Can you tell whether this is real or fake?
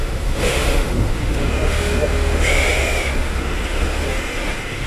fake